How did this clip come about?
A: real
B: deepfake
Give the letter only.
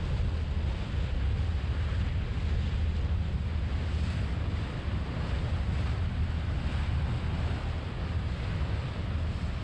A